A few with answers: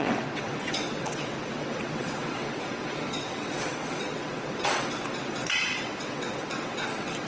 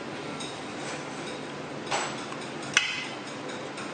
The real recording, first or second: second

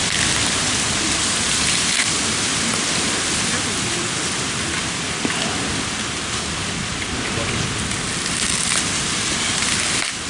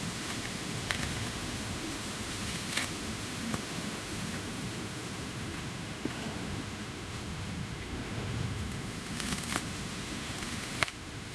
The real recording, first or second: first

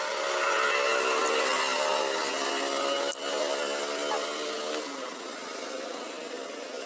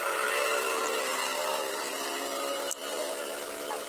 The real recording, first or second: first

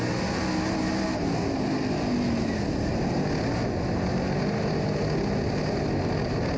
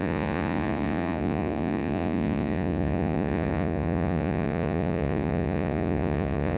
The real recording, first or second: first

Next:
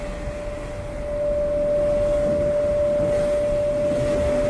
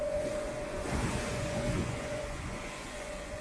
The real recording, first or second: first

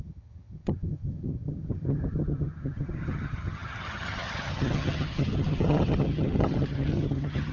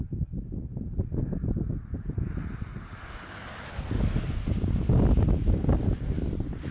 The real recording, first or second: second